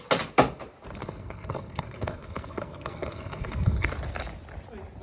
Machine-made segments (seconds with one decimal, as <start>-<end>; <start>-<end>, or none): 1.0-3.9